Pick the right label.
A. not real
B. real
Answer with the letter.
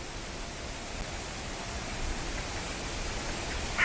B